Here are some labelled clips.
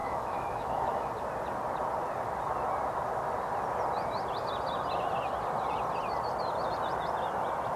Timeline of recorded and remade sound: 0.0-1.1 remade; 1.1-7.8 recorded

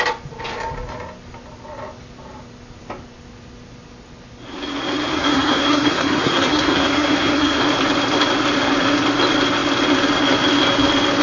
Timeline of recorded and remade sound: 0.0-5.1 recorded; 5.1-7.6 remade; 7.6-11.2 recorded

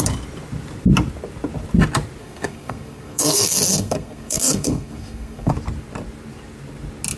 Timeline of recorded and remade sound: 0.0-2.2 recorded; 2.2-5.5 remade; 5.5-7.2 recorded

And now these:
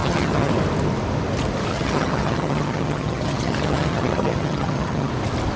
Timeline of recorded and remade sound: 0.0-0.5 remade; 0.5-1.7 recorded; 1.7-5.1 remade; 5.1-5.6 recorded